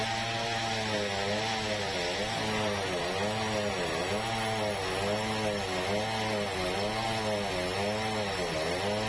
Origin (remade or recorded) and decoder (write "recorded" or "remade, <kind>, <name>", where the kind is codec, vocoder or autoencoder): recorded